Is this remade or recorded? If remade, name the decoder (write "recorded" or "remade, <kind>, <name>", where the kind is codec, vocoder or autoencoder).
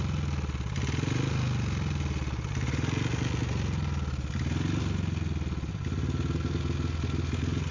recorded